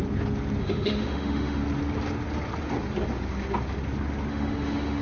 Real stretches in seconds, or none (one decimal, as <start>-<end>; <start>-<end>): 0.0-0.6; 1.6-4.3